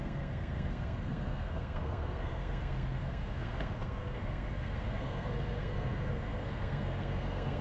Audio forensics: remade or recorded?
remade